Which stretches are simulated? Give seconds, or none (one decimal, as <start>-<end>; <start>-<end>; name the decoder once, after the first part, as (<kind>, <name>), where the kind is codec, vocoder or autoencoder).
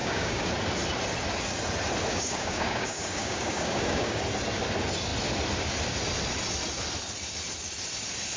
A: 0.0-0.5 (codec, DAC); 2.1-4.2